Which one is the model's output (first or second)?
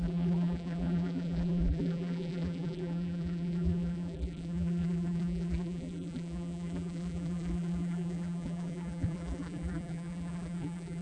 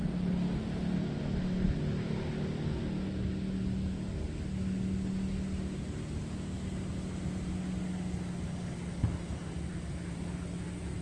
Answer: first